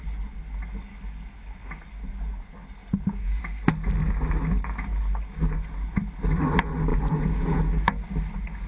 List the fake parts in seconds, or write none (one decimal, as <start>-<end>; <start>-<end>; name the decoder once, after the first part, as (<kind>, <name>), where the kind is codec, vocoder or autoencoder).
2.8-3.4 (vocoder, Vocos); 6.9-7.6